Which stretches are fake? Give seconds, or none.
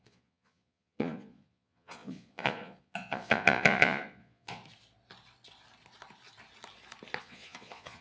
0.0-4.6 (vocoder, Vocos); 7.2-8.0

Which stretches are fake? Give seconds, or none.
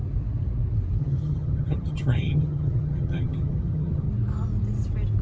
1.0-4.1 (vocoder, HiFi-GAN)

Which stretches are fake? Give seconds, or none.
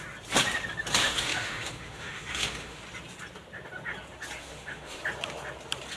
1.0-2.8 (autoencoder, DAC-VAE); 4.4-5.0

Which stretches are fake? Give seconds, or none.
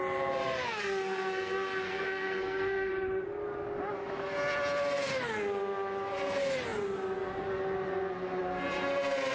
0.8-2.9 (codec, SNAC)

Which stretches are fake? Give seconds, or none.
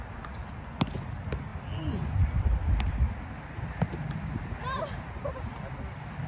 none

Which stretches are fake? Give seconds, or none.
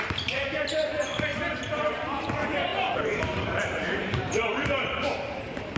0.0-5.8 (vocoder, BigVGAN v2)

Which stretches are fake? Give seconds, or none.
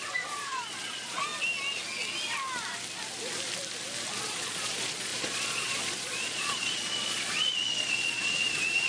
0.0-1.3 (vocoder, Vocos); 4.2-8.9